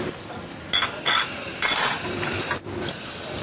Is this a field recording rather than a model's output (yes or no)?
yes